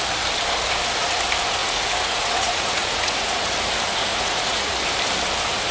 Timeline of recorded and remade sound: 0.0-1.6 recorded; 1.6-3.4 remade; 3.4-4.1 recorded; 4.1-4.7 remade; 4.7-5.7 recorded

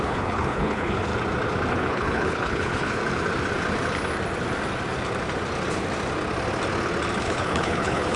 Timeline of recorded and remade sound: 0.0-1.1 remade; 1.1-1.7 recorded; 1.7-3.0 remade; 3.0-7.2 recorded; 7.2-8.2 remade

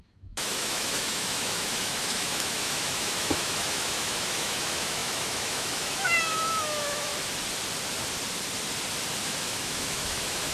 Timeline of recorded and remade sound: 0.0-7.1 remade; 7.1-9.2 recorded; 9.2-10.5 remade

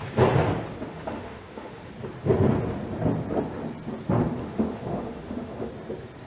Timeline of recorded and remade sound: 0.0-0.9 recorded; 0.9-1.9 remade; 1.9-4.4 recorded; 4.4-5.7 remade; 5.7-6.3 recorded

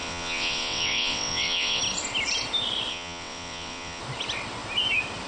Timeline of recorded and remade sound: 0.0-1.8 remade; 1.8-2.9 recorded; 2.9-4.0 remade; 4.0-5.3 recorded

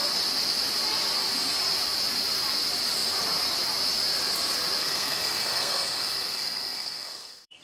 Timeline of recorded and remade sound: 0.0-4.8 recorded; 4.8-7.6 remade

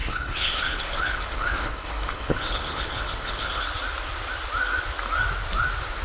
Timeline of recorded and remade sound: 0.0-3.6 remade; 3.6-6.0 recorded

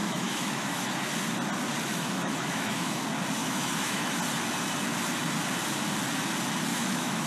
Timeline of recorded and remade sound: 0.0-0.9 remade; 0.9-1.9 recorded; 1.9-3.0 remade; 3.0-3.4 recorded; 3.4-4.2 remade; 4.2-6.7 recorded; 6.7-7.3 remade